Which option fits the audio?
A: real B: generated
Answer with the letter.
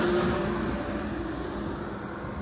A